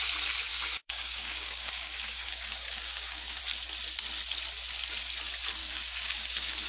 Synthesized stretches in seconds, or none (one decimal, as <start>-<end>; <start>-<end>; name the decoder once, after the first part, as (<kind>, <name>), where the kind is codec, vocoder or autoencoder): 0.5-3.4 (codec, DAC); 5.6-6.7